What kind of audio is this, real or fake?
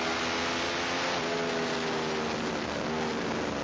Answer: real